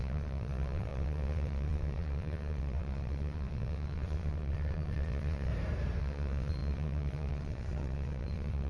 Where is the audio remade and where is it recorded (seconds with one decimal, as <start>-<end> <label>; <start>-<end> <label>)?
0.0-5.5 remade; 5.5-6.0 recorded; 6.0-8.7 remade